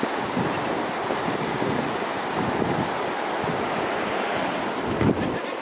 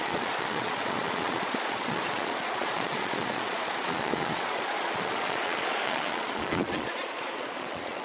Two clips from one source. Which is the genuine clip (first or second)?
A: first